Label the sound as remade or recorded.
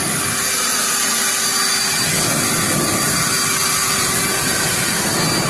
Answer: recorded